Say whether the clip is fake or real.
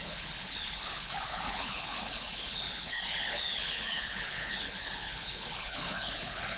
fake